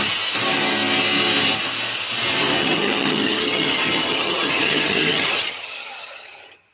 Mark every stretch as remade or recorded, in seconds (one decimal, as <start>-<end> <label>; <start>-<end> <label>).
0.0-2.6 recorded; 2.6-6.7 remade